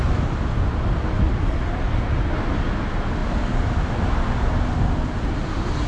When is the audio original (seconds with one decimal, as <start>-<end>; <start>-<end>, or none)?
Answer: 0.0-5.9